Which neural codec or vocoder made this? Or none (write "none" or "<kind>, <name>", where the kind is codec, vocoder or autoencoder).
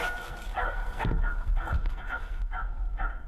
codec, SNAC